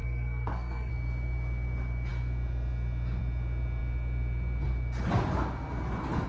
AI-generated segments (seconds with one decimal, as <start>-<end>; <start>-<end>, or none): 0.0-0.9